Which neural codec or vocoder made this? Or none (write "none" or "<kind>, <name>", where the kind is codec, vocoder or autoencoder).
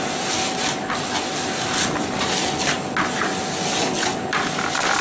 none